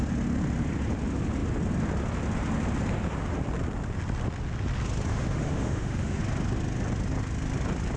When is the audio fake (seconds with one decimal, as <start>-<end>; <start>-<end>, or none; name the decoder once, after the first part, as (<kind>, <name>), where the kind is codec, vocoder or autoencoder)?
5.1-6.2 (autoencoder, DAC-VAE)